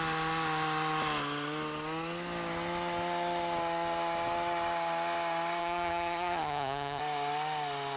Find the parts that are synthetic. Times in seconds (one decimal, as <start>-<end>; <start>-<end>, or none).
5.6-7.0